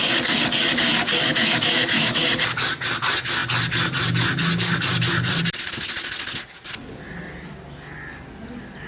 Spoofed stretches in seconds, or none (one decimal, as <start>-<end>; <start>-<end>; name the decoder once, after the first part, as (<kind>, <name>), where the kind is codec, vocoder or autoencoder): 1.3-2.2 (autoencoder, DAC-VAE)